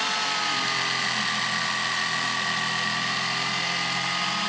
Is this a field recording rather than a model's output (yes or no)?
yes